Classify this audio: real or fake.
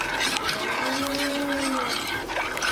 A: fake